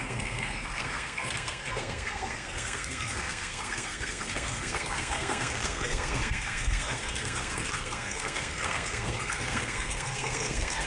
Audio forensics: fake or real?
fake